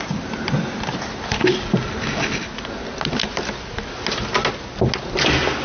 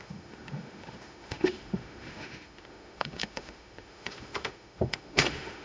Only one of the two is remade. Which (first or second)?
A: second